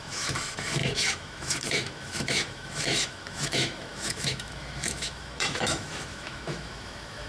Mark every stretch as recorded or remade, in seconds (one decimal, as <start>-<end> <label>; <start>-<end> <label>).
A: 0.0-7.3 remade